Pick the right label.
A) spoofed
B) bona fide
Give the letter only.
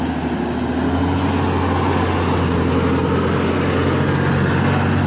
B